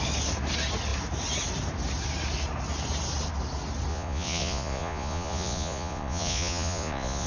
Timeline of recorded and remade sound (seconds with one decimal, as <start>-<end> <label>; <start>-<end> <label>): 0.0-3.9 recorded; 3.9-7.3 remade